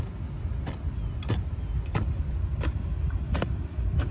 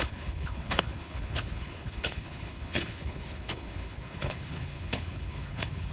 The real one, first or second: first